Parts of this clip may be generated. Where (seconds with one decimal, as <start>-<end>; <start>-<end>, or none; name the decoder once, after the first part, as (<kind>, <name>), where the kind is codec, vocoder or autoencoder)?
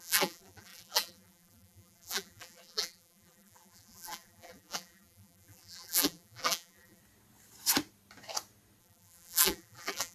0.0-7.0 (vocoder, BigVGAN v2); 8.8-10.1